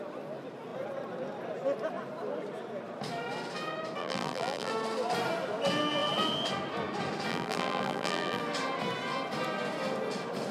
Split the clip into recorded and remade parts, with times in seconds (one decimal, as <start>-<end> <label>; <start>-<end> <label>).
0.0-4.0 recorded; 4.0-4.7 remade; 4.7-7.3 recorded; 7.3-8.4 remade; 8.4-10.5 recorded